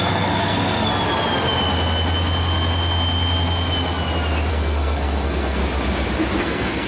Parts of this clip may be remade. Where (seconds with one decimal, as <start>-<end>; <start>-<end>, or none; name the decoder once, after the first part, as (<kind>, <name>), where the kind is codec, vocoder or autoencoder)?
0.0-0.9 (codec, SNAC); 4.5-5.6; 6.4-6.9